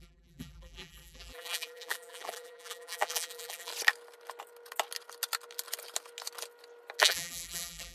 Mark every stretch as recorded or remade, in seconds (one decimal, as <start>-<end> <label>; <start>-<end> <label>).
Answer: 0.0-3.7 remade; 3.7-7.0 recorded; 7.0-7.9 remade